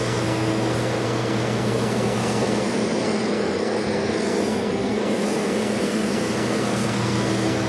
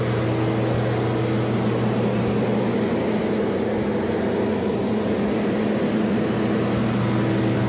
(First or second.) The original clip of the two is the second